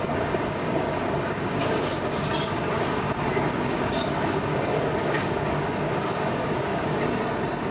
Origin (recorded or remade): remade